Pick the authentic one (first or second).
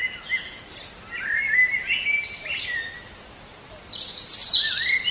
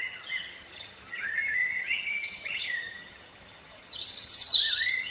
first